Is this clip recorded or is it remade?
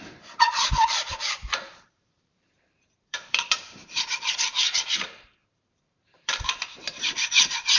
remade